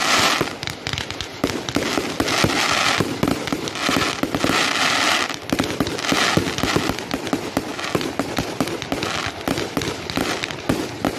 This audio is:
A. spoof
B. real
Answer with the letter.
B